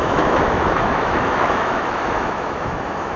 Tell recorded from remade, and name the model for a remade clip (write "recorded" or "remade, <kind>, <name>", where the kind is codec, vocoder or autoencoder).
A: remade, autoencoder, DAC-VAE